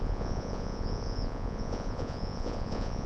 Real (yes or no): no